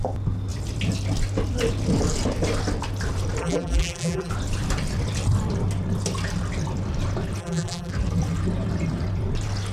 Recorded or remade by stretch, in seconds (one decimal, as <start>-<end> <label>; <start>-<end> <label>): 0.0-3.4 recorded; 3.4-4.3 remade; 4.3-7.4 recorded; 7.4-7.9 remade; 7.9-9.7 recorded